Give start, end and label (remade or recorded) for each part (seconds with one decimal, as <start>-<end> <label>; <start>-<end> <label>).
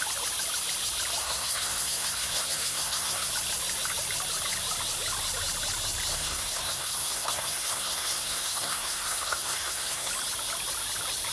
0.0-1.2 recorded; 1.2-3.3 remade; 3.3-6.1 recorded; 6.1-10.1 remade; 10.1-11.3 recorded